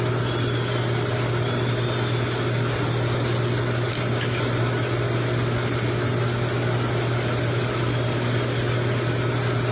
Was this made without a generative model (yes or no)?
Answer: yes